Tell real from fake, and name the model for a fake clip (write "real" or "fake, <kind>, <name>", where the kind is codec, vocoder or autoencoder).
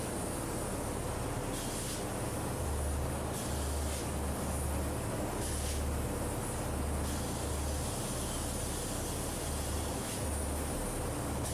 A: real